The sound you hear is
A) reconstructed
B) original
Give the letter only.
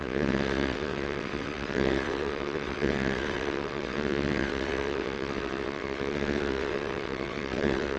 A